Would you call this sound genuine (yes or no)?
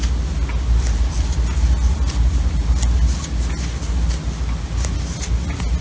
yes